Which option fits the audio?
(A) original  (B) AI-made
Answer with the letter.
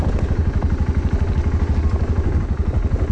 A